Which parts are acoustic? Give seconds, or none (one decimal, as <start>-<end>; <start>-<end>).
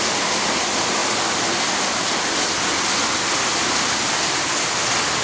1.0-3.1